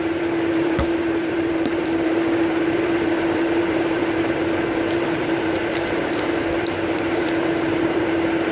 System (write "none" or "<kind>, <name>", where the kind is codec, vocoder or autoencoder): vocoder, BigVGAN v2